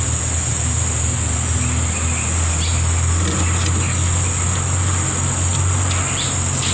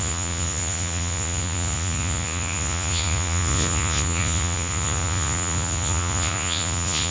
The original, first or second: first